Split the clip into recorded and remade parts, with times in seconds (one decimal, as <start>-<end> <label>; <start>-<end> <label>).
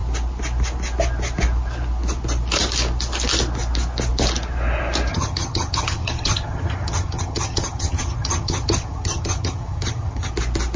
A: 0.0-5.1 recorded; 5.1-10.3 remade; 10.3-10.8 recorded